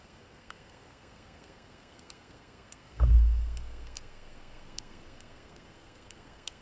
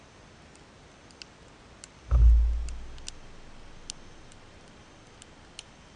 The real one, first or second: second